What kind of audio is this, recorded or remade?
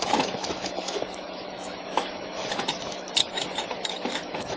remade